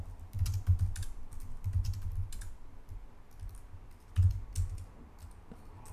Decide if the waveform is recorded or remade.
recorded